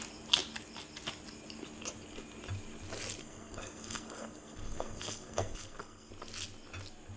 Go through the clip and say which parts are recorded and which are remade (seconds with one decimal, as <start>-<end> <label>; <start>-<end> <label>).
0.0-3.2 recorded; 3.2-6.1 remade; 6.1-7.2 recorded